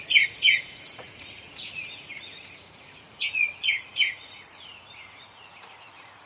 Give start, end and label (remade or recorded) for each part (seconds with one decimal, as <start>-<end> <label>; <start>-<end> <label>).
0.0-6.3 remade